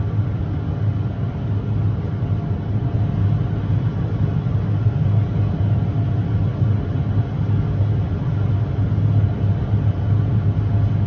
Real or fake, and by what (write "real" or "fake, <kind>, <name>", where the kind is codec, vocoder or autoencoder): real